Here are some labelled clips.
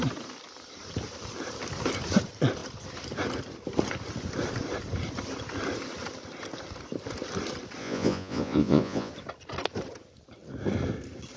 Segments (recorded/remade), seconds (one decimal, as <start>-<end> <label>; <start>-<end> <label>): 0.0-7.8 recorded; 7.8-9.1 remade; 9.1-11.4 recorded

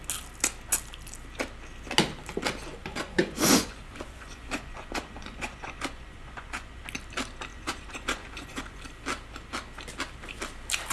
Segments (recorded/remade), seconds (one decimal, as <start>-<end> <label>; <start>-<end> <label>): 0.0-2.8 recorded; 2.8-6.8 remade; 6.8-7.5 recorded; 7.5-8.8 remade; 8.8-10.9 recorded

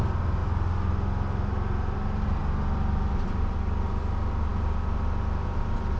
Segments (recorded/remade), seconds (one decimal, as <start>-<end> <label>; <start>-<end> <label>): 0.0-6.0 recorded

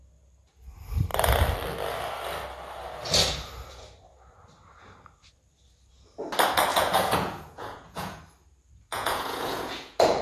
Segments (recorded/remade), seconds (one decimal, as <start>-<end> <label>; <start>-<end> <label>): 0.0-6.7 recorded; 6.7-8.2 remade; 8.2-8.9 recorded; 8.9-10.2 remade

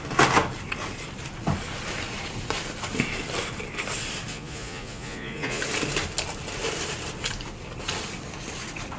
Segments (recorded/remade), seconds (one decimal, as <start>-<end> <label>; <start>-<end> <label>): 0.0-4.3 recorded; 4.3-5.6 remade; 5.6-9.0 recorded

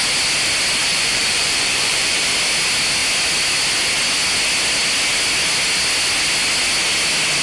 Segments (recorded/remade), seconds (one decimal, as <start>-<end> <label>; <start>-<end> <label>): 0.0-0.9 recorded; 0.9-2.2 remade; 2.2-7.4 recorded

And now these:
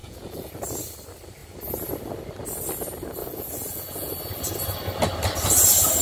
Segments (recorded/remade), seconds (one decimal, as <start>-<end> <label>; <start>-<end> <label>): 0.0-0.5 remade; 0.5-3.2 recorded; 3.2-4.1 remade; 4.1-6.0 recorded

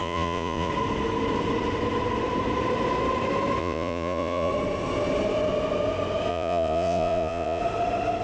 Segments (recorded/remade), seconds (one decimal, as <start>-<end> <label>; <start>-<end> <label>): 0.0-0.7 remade; 0.7-3.6 recorded; 3.6-4.5 remade; 4.5-6.3 recorded; 6.3-7.6 remade; 7.6-8.2 recorded